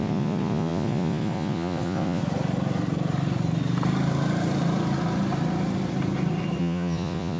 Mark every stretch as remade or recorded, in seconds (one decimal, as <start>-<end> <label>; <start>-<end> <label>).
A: 0.0-2.2 remade; 2.2-6.6 recorded; 6.6-7.4 remade